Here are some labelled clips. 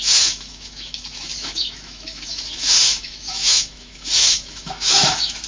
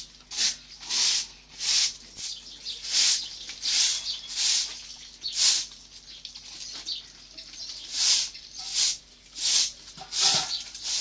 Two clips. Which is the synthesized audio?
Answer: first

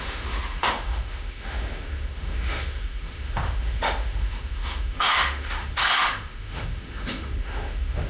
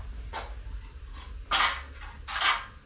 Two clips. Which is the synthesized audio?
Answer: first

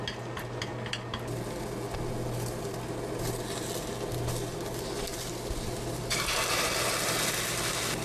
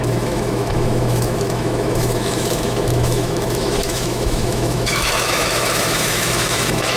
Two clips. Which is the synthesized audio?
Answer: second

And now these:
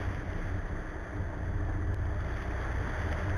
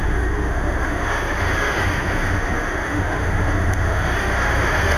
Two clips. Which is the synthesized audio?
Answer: second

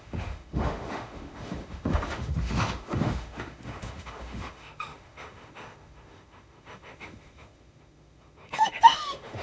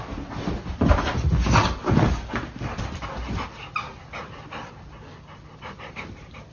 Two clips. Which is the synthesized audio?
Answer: first